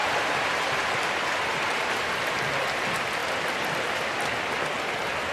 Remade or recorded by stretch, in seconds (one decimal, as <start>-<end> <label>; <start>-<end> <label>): 0.0-2.1 remade; 2.1-5.3 recorded

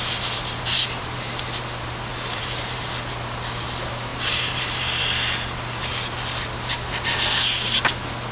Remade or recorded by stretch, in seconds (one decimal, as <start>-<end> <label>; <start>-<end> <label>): 0.0-0.7 recorded; 0.7-1.4 remade; 1.4-2.1 recorded; 2.1-2.9 remade; 2.9-4.1 recorded; 4.1-4.8 remade; 4.8-8.3 recorded